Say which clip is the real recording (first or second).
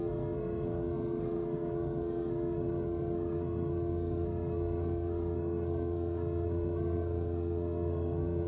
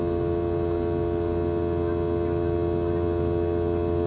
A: second